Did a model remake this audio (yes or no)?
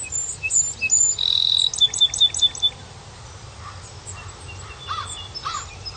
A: no